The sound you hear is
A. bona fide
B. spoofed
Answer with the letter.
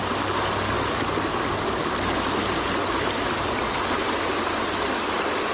A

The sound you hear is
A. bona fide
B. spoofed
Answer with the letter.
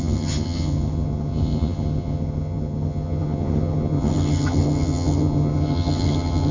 B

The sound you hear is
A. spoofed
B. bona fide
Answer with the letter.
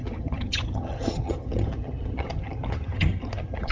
A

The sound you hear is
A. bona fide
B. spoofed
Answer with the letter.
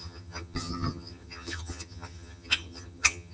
B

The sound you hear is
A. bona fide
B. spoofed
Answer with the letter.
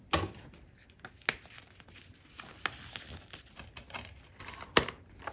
A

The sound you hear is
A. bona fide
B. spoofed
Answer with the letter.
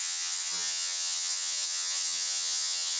B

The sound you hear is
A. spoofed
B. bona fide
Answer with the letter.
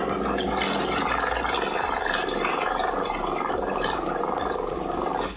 B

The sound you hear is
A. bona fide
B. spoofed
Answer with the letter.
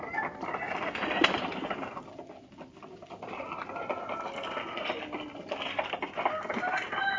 A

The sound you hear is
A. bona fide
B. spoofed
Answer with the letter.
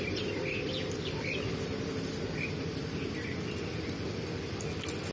A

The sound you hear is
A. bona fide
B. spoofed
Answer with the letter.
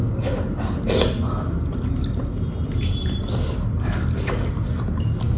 A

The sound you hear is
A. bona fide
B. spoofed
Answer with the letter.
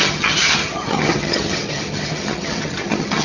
B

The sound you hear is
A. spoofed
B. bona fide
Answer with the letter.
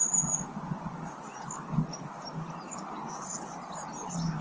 B